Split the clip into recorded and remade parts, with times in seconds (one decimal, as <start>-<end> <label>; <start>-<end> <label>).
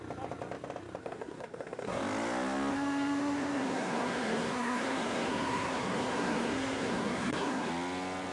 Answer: 0.0-1.0 recorded; 1.0-2.0 remade; 2.0-2.7 recorded; 2.7-7.7 remade; 7.7-8.3 recorded